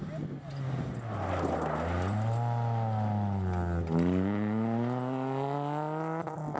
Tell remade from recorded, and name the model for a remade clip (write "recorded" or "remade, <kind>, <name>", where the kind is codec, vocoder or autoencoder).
recorded